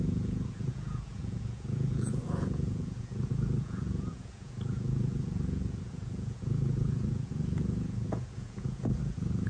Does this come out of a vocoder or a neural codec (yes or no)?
yes